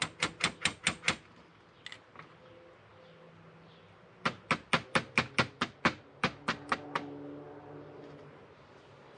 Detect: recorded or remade recorded